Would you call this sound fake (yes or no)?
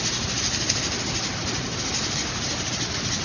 no